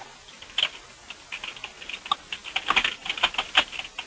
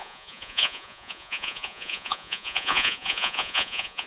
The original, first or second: first